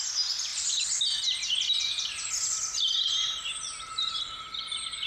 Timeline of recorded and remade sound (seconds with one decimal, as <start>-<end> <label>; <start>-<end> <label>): 0.0-5.1 recorded